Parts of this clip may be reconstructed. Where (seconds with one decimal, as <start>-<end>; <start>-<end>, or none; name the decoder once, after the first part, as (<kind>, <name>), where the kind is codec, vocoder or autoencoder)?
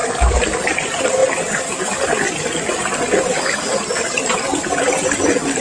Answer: none